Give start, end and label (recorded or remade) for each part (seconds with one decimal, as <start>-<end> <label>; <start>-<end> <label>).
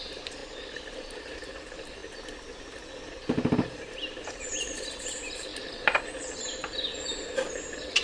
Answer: 0.0-0.4 remade; 0.4-0.9 recorded; 0.9-2.0 remade; 2.0-2.6 recorded; 2.6-5.5 remade; 5.5-6.9 recorded; 6.9-8.0 remade